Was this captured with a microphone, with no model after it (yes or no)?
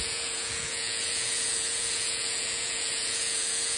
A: no